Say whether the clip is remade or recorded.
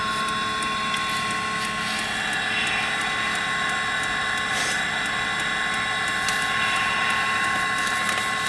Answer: recorded